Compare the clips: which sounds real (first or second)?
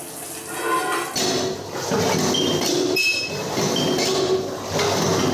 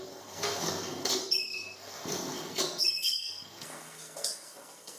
first